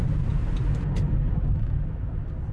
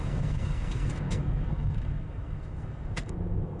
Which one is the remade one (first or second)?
second